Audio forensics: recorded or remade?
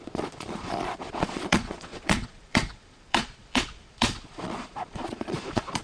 remade